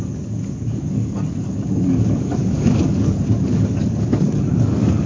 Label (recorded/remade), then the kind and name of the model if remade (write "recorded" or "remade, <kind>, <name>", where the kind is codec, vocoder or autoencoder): remade, codec, DAC